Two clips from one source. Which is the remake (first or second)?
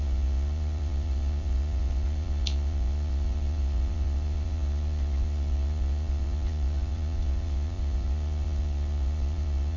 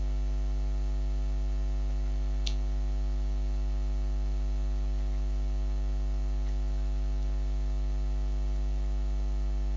first